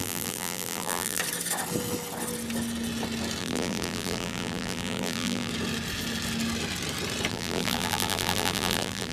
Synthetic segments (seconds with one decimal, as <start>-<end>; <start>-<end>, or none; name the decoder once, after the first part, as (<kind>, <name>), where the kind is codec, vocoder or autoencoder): 0.0-1.2 (vocoder, BigVGAN v2); 3.4-5.5; 7.3-9.1